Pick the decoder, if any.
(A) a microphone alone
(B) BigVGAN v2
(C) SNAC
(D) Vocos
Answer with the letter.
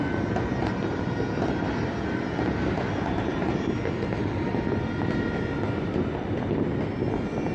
A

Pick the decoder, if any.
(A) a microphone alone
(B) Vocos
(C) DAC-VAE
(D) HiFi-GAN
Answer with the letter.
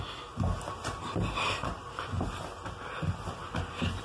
A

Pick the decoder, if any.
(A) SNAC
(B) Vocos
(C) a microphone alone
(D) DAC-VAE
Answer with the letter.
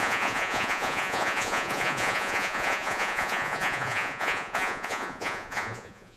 B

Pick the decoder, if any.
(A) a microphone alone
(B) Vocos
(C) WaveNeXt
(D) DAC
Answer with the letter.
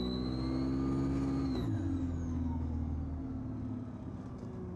A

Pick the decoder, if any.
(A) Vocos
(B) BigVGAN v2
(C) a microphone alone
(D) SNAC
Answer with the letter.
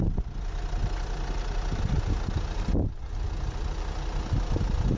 C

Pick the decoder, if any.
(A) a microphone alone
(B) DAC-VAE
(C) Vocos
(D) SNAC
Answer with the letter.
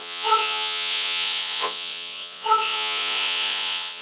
C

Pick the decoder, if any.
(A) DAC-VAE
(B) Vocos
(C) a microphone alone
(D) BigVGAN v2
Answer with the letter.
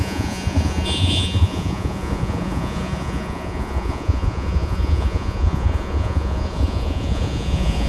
B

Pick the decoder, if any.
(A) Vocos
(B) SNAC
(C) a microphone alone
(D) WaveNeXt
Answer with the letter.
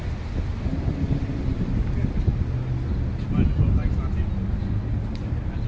C